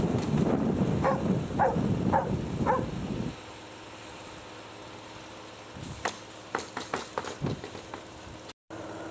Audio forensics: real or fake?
real